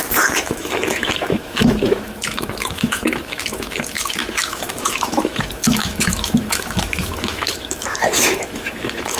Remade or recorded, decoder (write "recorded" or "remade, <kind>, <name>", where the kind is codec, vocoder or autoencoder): remade, autoencoder, DAC-VAE